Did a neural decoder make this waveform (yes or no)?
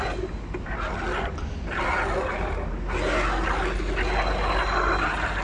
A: no